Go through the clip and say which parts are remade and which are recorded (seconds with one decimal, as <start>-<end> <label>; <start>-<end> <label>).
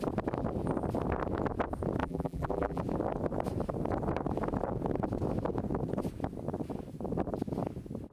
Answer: 0.0-2.0 recorded; 2.0-2.8 remade; 2.8-8.1 recorded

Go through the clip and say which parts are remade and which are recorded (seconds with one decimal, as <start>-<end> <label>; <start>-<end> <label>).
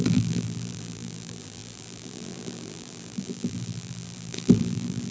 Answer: 0.0-5.1 remade